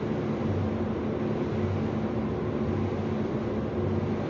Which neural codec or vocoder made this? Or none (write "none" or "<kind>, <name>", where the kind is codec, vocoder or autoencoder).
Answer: none